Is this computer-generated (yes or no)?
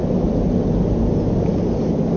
no